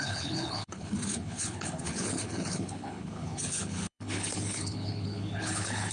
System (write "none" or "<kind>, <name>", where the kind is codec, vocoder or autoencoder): codec, HILCodec